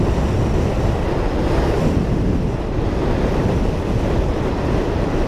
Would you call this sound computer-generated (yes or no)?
no